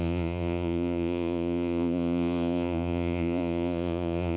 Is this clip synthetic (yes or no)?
yes